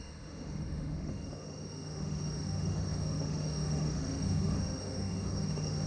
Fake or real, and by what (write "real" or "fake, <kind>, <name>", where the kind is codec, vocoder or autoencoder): fake, autoencoder, DAC-VAE